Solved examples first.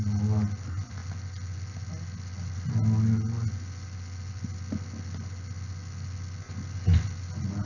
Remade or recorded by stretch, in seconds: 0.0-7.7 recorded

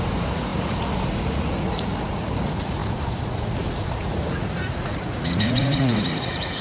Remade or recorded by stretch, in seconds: 0.0-6.6 remade

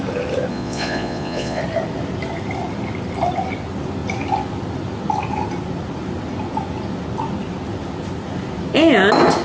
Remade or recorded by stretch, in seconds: 0.0-0.5 recorded; 0.5-1.6 remade; 1.6-9.4 recorded

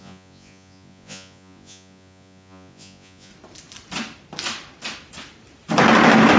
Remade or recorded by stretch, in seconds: 0.0-3.3 remade; 3.3-6.4 recorded

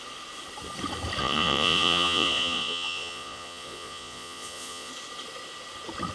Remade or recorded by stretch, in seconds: 0.0-1.2 recorded; 1.2-4.9 remade; 4.9-6.1 recorded

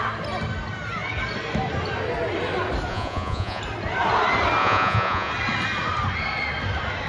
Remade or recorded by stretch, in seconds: 0.0-2.9 recorded; 2.9-3.6 remade; 3.6-4.6 recorded; 4.6-5.3 remade; 5.3-7.1 recorded

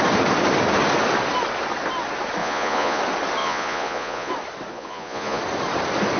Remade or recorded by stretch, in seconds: 0.0-2.4 recorded; 2.4-3.0 remade; 3.0-3.4 recorded; 3.4-4.3 remade; 4.3-4.7 recorded; 4.7-5.4 remade; 5.4-6.2 recorded